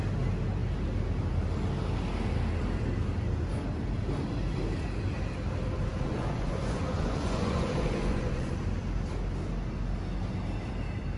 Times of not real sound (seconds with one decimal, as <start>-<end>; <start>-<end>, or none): 5.9-8.5